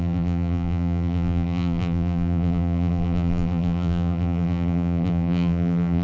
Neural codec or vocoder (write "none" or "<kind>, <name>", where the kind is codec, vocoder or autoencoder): vocoder, BigVGAN v2